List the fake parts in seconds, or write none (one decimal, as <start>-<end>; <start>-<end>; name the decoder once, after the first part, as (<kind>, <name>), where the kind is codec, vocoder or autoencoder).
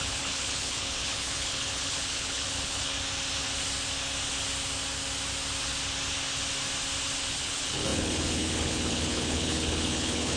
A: 0.0-2.9 (codec, HILCodec); 7.3-10.4